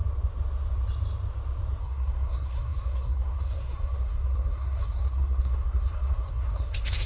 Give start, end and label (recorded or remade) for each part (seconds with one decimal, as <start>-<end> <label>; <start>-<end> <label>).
0.0-1.8 recorded; 1.8-7.1 remade